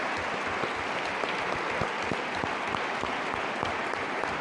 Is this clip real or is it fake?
real